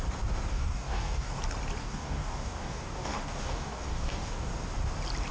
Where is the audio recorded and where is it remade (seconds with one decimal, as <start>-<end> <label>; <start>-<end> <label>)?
0.0-0.5 recorded; 0.5-1.4 remade; 1.4-1.8 recorded; 1.8-4.5 remade; 4.5-5.3 recorded